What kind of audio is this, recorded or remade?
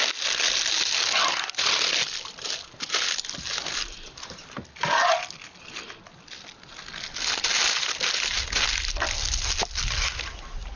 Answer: recorded